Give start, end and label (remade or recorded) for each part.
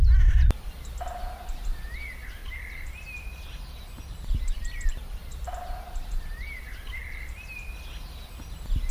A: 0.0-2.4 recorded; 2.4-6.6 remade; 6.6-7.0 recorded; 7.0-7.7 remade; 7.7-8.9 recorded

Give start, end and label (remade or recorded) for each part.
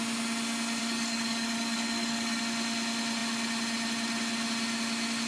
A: 0.0-0.8 recorded; 0.8-2.4 remade; 2.4-5.3 recorded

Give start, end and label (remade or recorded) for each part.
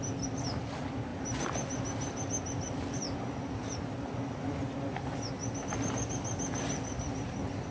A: 0.0-7.7 recorded